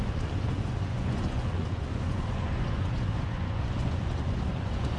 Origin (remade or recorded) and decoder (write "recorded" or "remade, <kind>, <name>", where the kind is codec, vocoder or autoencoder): remade, vocoder, Vocos